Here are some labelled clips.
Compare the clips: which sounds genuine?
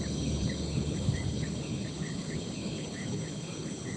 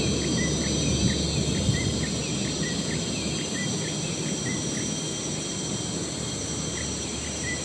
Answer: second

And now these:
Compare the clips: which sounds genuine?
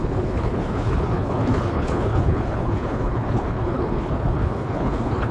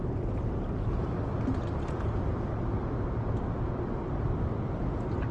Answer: second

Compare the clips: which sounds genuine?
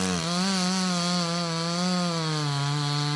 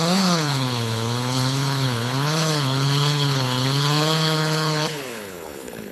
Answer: first